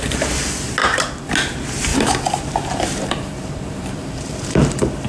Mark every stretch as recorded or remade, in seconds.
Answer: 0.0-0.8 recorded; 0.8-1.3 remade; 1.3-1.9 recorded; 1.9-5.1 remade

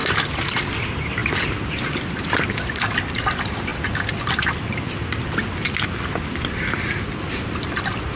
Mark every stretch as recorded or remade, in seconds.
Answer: 0.0-0.5 recorded; 0.5-3.7 remade; 3.7-6.3 recorded; 6.3-8.2 remade

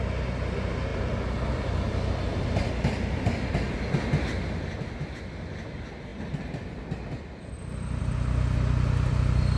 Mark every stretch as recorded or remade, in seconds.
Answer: 0.0-9.6 recorded

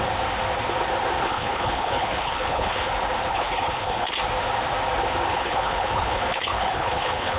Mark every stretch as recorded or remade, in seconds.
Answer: 0.0-1.2 recorded; 1.2-2.9 remade; 2.9-3.3 recorded; 3.3-4.1 remade; 4.1-5.3 recorded; 5.3-7.4 remade

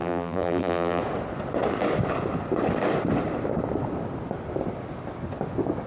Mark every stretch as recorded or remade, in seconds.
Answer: 0.0-1.0 remade; 1.0-5.9 recorded

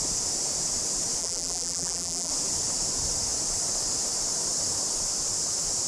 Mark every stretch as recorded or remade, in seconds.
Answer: 0.0-1.2 recorded; 1.2-2.3 remade; 2.3-5.9 recorded

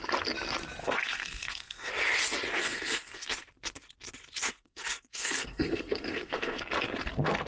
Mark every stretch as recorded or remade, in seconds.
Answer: 0.0-0.8 recorded; 0.8-1.9 remade; 1.9-2.6 recorded; 2.6-3.3 remade; 3.3-4.5 recorded; 4.5-6.6 remade; 6.6-7.5 recorded